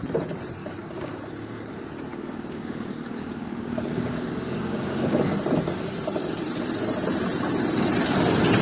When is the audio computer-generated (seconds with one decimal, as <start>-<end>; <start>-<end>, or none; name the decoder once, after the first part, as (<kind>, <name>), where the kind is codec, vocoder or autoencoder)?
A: 0.6-1.2 (codec, DAC); 2.1-5.2